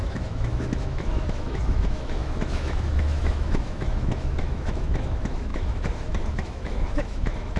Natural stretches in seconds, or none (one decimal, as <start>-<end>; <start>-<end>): none